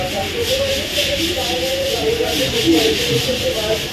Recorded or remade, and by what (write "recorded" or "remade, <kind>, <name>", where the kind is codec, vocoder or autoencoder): recorded